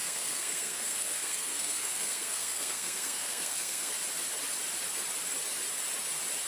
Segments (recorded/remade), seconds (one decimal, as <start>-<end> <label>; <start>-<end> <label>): 0.0-3.9 remade; 3.9-6.5 recorded